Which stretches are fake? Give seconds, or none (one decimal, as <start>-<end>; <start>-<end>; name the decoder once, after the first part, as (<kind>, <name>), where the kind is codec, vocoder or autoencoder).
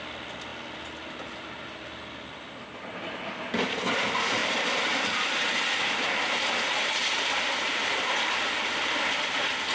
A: 4.4-8.2 (vocoder, BigVGAN v2)